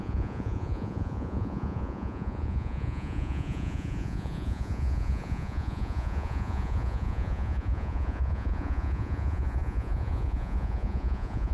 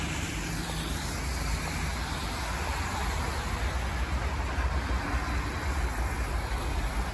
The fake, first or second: first